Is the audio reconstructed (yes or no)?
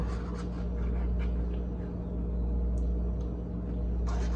no